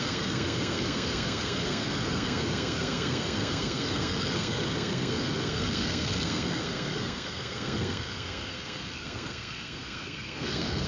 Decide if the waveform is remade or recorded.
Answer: remade